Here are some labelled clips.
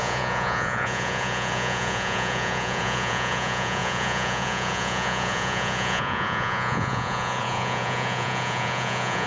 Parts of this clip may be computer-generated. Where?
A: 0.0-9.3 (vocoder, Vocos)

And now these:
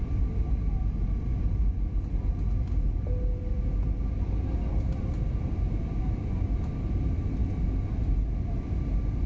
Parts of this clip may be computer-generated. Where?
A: none

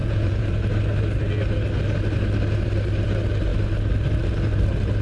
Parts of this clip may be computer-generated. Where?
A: 0.0-0.5 (vocoder, Vocos)

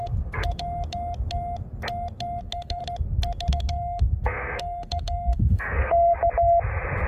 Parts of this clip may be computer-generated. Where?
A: 0.0-0.4 (codec, SNAC); 2.4-2.8; 3.5-6.2

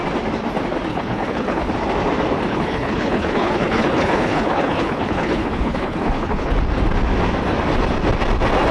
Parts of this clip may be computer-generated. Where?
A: 0.9-1.7 (codec, HILCodec); 2.5-6.5

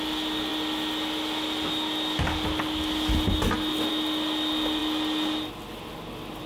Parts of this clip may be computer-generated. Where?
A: none

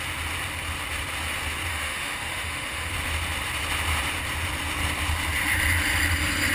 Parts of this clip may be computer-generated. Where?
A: 1.7-2.9 (autoencoder, DAC-VAE)